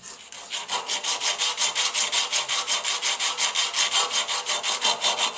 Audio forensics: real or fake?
real